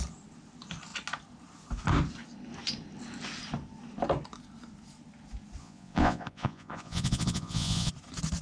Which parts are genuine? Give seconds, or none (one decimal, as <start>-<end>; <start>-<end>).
0.0-5.6; 7.9-8.4